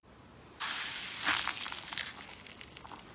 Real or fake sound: real